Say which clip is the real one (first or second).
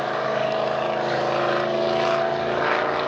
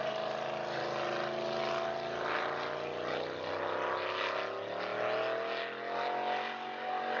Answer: second